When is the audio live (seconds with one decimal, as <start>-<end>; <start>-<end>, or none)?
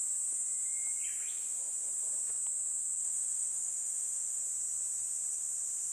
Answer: 0.0-3.0; 4.4-5.9